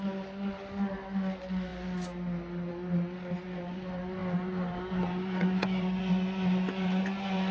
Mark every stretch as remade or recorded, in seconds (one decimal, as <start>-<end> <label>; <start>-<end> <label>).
0.0-7.5 recorded